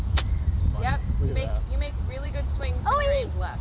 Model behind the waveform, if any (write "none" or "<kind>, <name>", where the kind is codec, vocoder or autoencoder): vocoder, BigVGAN v2